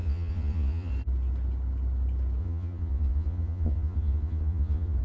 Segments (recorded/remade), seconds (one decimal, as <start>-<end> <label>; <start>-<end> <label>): 0.0-0.9 remade; 0.9-2.4 recorded; 2.4-5.0 remade